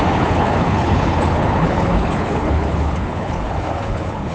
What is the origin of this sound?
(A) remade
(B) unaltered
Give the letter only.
A